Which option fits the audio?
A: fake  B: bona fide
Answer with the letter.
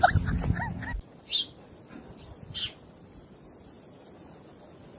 B